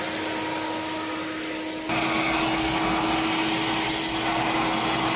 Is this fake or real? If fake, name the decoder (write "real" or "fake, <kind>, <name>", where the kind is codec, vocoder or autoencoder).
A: real